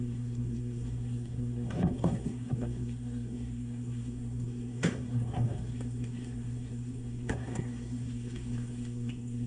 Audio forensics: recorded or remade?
remade